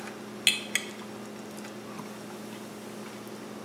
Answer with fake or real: real